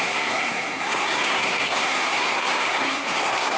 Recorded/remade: remade